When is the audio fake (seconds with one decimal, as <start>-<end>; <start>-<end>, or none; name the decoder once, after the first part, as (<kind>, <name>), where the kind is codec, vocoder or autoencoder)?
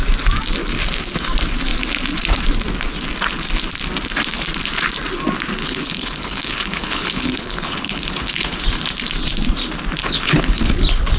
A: 5.6-8.6 (codec, HILCodec); 10.0-10.7